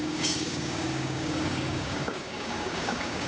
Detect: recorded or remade remade